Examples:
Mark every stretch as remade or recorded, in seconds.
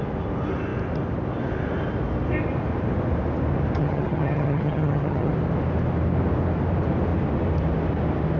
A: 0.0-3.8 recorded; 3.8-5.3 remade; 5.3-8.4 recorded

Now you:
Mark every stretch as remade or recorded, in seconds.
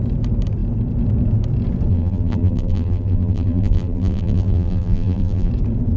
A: 0.0-1.9 recorded; 1.9-5.5 remade; 5.5-6.0 recorded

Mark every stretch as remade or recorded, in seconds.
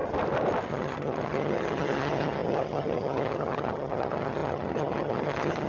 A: 0.0-0.7 recorded; 0.7-5.7 remade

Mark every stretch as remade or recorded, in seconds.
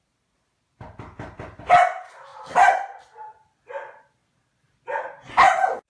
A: 0.0-5.9 recorded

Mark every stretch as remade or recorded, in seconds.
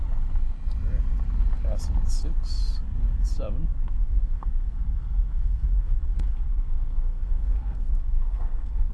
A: 0.0-4.0 recorded; 4.0-8.9 remade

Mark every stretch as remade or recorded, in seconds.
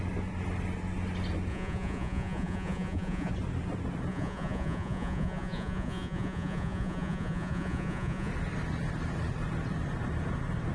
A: 0.0-1.5 recorded; 1.5-3.3 remade; 3.3-4.1 recorded; 4.1-8.3 remade; 8.3-10.7 recorded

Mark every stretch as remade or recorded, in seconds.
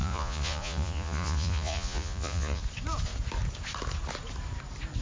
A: 0.0-2.6 remade; 2.6-5.0 recorded